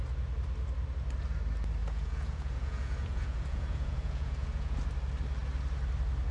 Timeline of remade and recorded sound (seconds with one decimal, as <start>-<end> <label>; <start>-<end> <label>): 0.0-1.8 recorded; 1.8-4.8 remade; 4.8-6.3 recorded